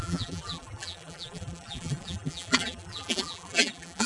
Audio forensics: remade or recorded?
remade